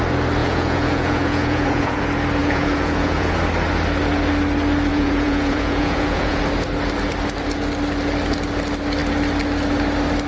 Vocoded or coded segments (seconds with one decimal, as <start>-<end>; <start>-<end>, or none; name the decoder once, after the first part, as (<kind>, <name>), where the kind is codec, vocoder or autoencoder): 0.4-2.0 (vocoder, Vocos); 2.4-3.3; 4.9-6.4